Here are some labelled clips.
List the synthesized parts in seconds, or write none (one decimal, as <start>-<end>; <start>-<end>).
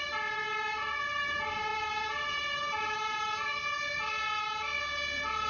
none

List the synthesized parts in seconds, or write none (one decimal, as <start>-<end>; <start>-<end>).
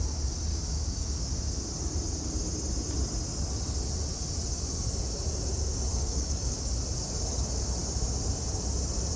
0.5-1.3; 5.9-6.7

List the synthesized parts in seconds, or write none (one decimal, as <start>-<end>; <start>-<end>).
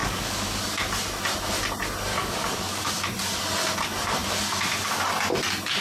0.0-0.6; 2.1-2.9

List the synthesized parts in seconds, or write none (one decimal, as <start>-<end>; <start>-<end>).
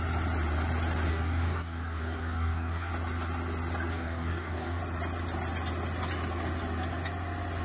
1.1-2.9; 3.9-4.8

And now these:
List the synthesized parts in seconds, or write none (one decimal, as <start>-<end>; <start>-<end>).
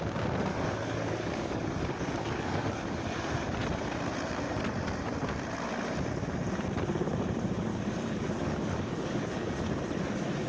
0.5-2.8; 7.7-9.5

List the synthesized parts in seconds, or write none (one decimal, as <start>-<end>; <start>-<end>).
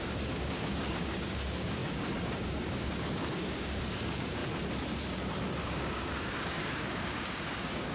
0.0-4.4; 5.6-7.9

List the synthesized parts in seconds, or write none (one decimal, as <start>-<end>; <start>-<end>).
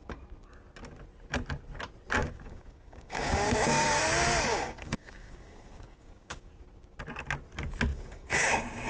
2.2-4.0; 4.5-6.5; 7.9-8.9